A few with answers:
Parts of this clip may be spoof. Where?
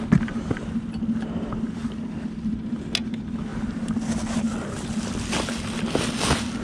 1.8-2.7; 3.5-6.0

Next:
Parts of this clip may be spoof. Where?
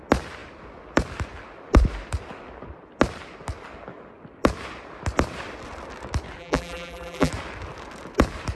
6.4-7.3